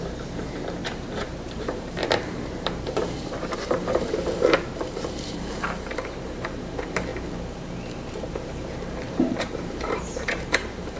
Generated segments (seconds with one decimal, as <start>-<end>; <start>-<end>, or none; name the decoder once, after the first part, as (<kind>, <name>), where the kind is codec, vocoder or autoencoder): 0.0-7.1 (vocoder, BigVGAN v2); 8.3-11.0